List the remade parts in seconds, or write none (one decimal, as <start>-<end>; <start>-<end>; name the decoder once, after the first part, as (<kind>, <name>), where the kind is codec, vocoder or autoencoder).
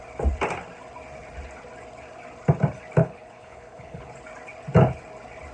3.0-4.1 (codec, HILCodec)